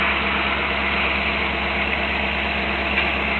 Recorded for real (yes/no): yes